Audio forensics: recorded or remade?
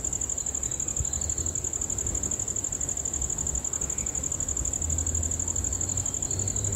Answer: recorded